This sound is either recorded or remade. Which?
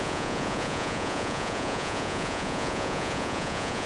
remade